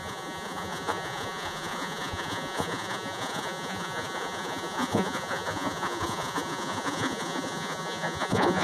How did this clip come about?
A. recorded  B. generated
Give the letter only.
B